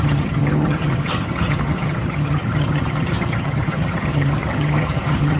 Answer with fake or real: fake